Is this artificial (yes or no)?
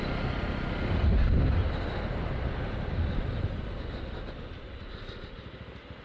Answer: no